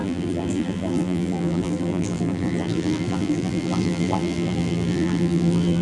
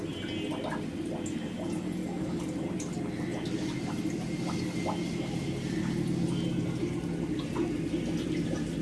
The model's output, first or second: first